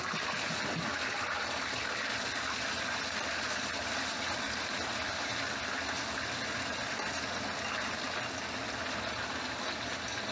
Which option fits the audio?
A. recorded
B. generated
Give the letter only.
A